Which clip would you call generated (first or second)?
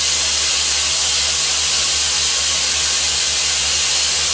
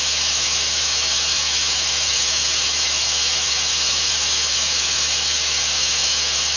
second